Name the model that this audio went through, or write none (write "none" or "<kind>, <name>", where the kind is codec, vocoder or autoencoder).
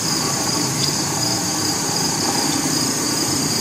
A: vocoder, BigVGAN v2